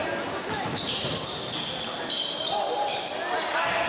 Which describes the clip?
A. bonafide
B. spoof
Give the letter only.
A